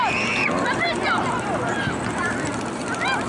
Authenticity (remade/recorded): recorded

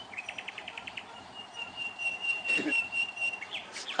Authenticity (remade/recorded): remade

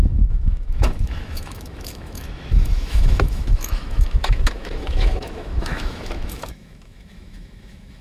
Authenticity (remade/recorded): remade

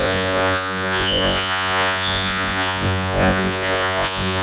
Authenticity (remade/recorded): remade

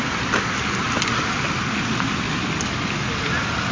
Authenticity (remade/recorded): recorded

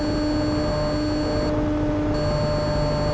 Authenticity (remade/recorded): recorded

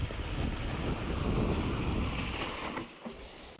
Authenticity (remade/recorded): recorded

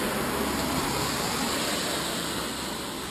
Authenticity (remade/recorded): recorded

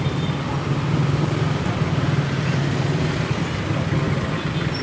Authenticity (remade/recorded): recorded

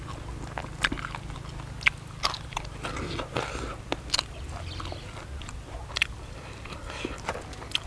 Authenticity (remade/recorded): recorded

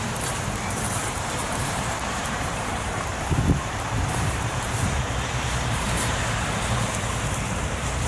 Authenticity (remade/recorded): remade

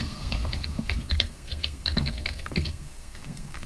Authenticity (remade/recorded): remade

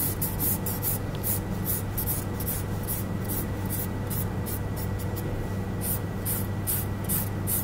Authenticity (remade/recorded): recorded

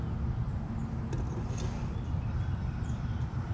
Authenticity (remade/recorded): recorded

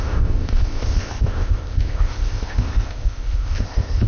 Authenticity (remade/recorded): remade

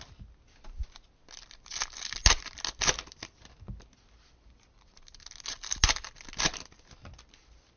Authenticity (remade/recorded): recorded